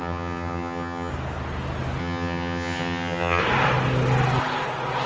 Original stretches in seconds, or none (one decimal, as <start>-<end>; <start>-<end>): 1.1-2.0; 3.4-5.1